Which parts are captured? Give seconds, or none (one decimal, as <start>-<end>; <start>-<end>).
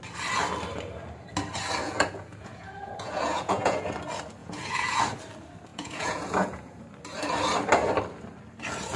0.0-1.8; 3.9-4.4; 5.0-5.7; 6.8-9.0